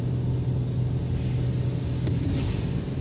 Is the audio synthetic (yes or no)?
no